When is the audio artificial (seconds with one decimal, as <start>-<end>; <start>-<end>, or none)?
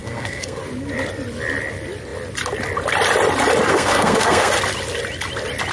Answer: 0.0-0.6; 3.7-4.5